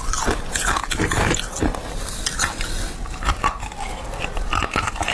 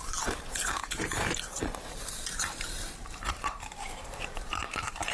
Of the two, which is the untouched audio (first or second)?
first